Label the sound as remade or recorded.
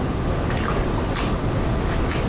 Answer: recorded